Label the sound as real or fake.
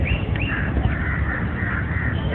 fake